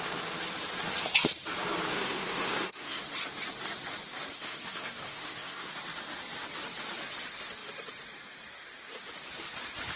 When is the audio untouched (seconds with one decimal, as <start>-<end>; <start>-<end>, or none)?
0.0-1.9; 3.0-4.3; 5.7-10.0